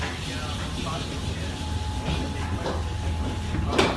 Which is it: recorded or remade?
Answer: recorded